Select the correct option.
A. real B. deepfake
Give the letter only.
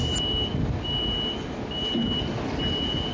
A